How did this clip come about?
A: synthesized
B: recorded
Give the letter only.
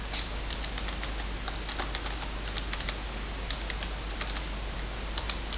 B